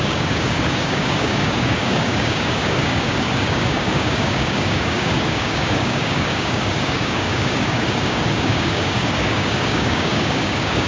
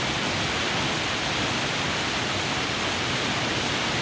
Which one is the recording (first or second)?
second